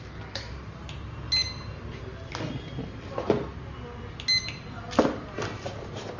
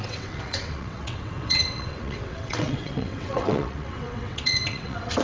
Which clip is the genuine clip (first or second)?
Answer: first